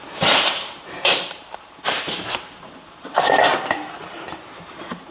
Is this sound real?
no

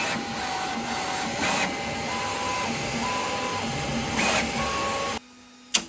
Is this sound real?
yes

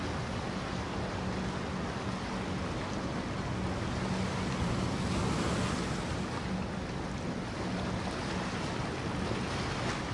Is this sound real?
yes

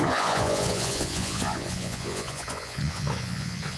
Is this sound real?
no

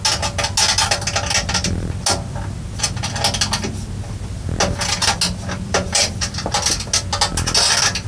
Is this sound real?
yes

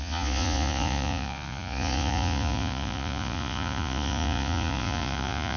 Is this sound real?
no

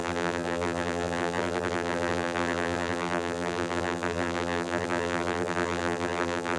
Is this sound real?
no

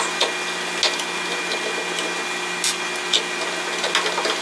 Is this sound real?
yes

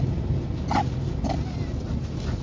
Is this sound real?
yes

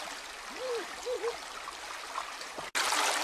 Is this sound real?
yes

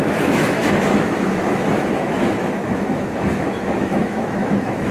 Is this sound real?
no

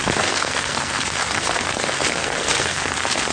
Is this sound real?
no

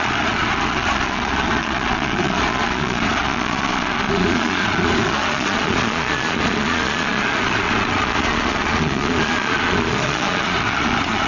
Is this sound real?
no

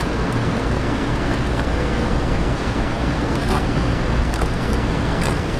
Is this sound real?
no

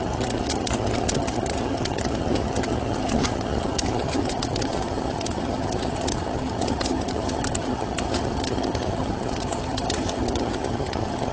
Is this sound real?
no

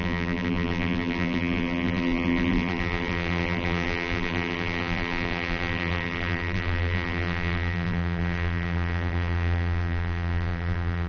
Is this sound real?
no